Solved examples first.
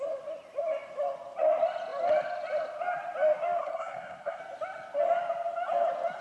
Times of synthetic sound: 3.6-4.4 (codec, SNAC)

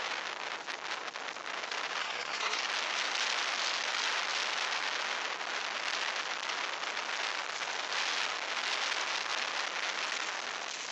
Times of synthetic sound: 2.0-2.6 (codec, SNAC)

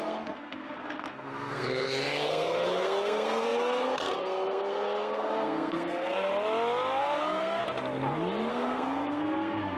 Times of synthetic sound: 0.0-6.3 (codec, SNAC); 7.0-7.6; 8.5-9.8

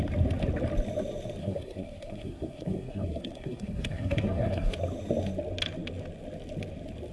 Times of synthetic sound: 1.4-4.7 (codec, SNAC)

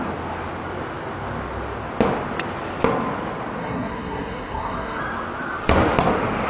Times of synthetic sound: 3.6-5.0 (codec, SNAC)

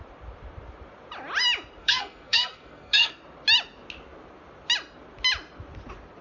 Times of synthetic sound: 1.8-3.2 (codec, SNAC)

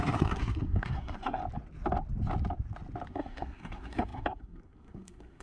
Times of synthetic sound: 0.0-1.4 (codec, SNAC); 3.1-5.4

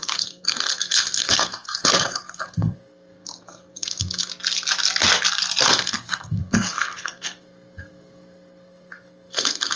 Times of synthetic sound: 0.0-4.3 (codec, SNAC); 5.7-9.8